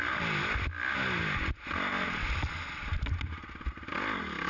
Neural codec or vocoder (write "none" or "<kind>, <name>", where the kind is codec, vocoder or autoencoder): none